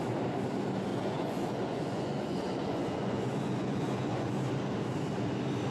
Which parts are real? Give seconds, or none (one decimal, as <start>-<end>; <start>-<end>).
0.0-0.9; 4.3-5.7